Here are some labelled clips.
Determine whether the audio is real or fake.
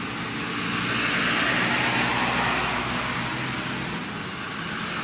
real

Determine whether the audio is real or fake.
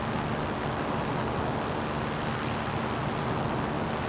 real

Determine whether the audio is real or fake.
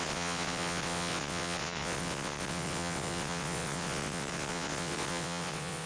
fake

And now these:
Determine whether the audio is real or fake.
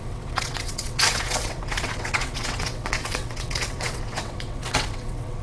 fake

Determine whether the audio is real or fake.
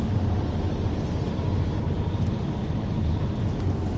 real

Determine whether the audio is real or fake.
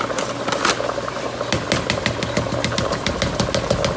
real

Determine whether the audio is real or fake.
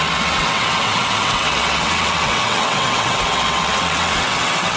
fake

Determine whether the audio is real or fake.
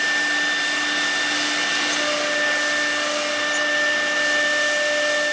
real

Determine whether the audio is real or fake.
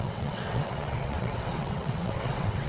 fake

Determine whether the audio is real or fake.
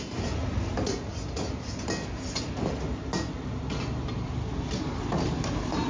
real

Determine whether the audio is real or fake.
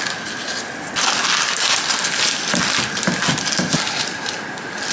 real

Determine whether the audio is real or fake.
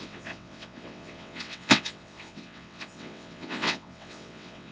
fake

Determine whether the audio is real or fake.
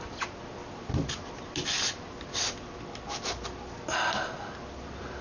real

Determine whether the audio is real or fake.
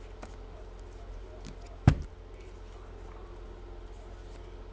real